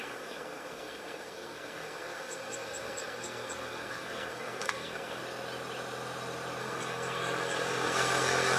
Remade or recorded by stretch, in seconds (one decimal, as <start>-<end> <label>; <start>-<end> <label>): 0.0-5.2 remade; 5.2-6.6 recorded; 6.6-8.6 remade